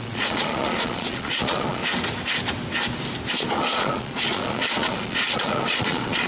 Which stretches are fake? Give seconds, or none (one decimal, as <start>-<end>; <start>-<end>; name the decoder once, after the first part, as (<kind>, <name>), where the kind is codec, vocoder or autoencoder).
0.0-1.8 (vocoder, Vocos); 3.5-6.3